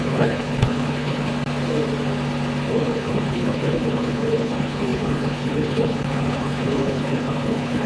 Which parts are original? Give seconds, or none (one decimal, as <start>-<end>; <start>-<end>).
1.3-2.7